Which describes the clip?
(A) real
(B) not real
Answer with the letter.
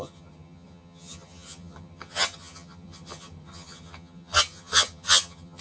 B